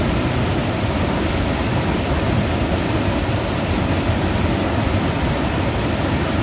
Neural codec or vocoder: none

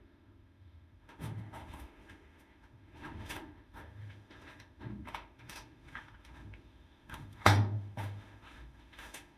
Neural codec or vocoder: autoencoder, DAC-VAE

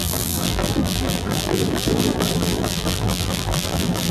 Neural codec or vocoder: vocoder, BigVGAN v2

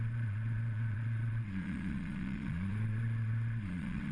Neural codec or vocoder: vocoder, Vocos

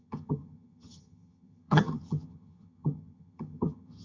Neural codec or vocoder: vocoder, HiFi-GAN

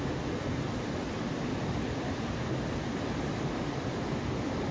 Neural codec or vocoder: vocoder, BigVGAN v2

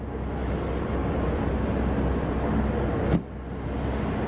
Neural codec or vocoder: none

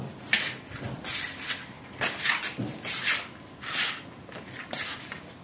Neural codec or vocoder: none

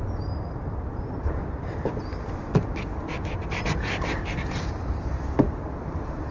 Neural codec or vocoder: none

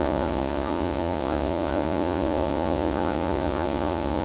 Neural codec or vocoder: vocoder, Vocos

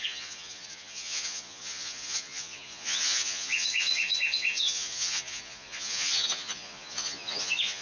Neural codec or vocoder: vocoder, Vocos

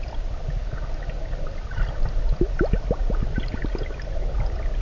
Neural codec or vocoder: none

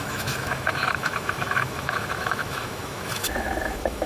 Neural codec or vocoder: autoencoder, DAC-VAE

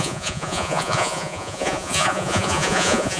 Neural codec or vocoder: vocoder, Vocos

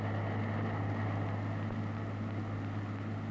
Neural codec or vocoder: none